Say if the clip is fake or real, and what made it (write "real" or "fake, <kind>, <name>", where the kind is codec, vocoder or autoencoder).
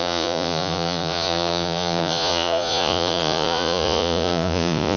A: fake, vocoder, Vocos